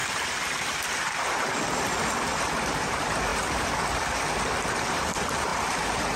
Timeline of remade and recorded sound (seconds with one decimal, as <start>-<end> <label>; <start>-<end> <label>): 0.0-3.3 remade; 3.3-4.9 recorded; 4.9-6.2 remade